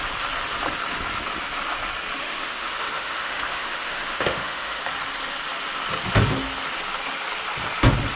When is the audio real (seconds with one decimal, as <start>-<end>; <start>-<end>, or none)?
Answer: 0.0-2.2; 4.8-8.2